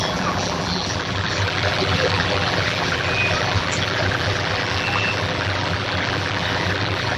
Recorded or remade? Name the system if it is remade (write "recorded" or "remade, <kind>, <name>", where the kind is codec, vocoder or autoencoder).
remade, vocoder, BigVGAN v2